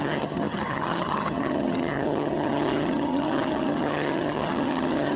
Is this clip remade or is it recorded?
remade